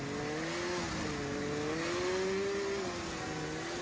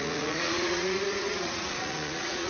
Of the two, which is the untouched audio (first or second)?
first